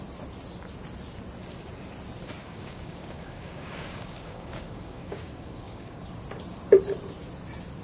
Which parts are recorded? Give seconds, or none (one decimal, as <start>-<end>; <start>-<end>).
0.0-2.4; 6.0-7.8